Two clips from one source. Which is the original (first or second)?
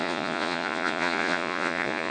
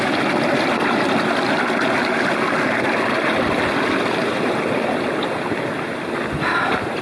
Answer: second